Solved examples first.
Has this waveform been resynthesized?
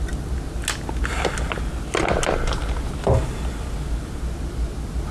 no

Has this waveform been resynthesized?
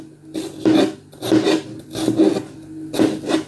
no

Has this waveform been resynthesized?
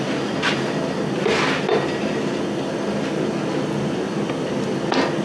no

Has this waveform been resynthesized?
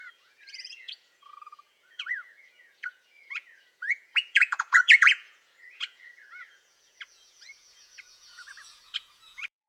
yes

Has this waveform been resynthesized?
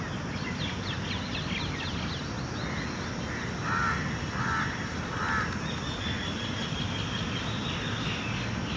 no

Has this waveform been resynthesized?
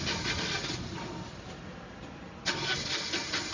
no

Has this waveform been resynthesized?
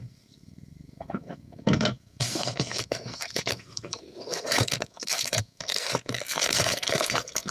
yes